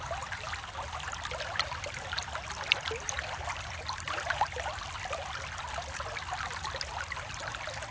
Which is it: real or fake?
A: real